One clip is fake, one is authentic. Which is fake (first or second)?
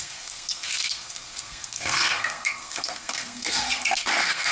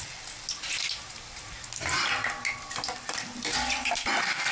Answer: first